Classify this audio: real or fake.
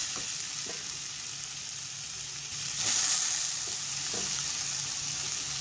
real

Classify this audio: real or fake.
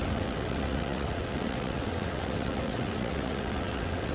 fake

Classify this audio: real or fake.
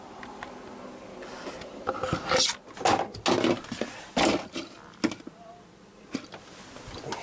real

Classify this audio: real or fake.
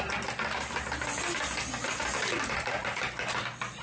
real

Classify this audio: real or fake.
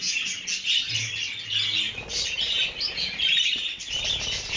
real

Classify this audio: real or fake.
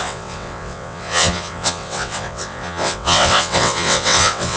fake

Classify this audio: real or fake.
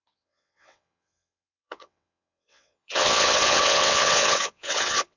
fake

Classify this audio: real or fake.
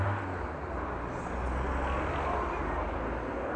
real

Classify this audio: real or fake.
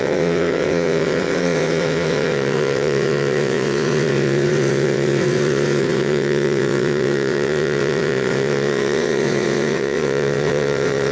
fake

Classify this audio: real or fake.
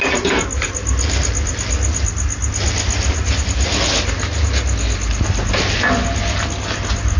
real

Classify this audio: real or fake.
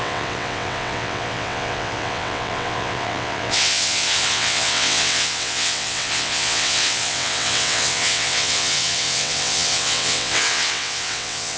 fake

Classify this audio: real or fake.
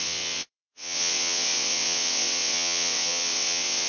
fake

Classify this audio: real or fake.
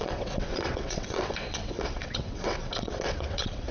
fake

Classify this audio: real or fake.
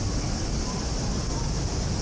real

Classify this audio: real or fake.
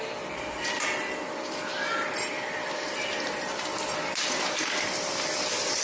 real